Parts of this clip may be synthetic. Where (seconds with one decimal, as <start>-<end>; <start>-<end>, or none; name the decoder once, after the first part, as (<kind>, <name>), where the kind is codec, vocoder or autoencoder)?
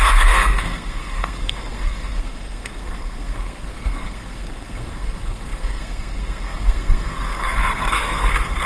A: 0.0-8.7 (codec, SNAC)